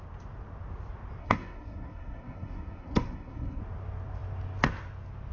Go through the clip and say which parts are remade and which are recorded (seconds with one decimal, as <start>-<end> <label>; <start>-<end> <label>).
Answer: 0.0-1.2 recorded; 1.2-3.6 remade; 3.6-5.3 recorded